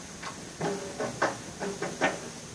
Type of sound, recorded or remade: recorded